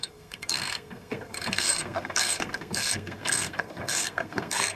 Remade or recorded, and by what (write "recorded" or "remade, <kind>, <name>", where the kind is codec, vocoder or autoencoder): remade, codec, SNAC